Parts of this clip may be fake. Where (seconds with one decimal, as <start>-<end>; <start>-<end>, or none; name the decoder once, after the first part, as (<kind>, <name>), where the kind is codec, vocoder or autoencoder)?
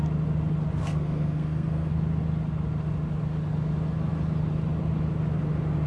0.8-1.9 (codec, SNAC)